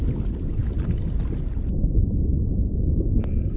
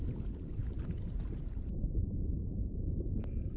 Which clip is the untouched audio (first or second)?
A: first